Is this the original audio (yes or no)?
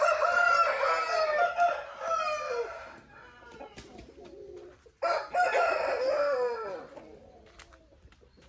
yes